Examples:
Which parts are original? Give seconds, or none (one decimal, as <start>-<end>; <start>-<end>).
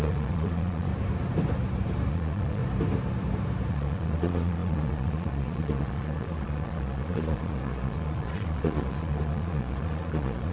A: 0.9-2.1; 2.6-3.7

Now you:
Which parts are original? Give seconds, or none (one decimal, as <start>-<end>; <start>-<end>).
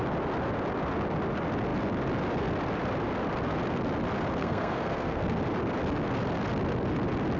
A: 0.0-4.4; 5.4-7.4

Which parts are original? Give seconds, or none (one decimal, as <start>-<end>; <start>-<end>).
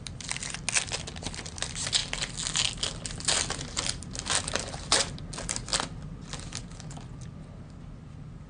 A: 0.0-8.5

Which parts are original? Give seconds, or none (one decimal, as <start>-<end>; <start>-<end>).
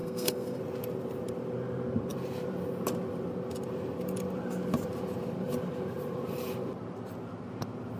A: 0.6-8.0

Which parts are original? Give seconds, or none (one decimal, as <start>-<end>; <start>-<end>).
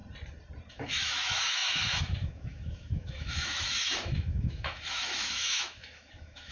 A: 0.0-0.7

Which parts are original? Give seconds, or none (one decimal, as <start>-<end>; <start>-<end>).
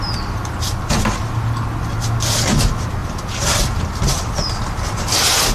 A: 0.0-3.0; 4.6-5.5